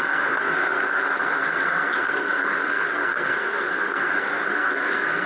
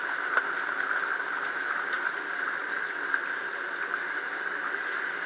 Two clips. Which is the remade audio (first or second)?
first